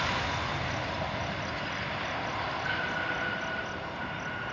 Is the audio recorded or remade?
recorded